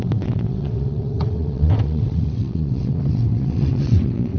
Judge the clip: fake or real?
fake